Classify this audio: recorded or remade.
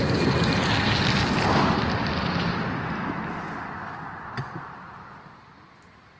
recorded